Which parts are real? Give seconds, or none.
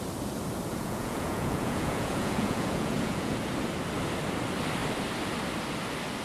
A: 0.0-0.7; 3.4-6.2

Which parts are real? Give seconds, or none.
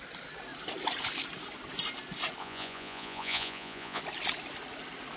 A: 0.0-2.4; 4.0-5.2